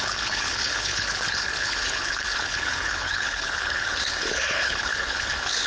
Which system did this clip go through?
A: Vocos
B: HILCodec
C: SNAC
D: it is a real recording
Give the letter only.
B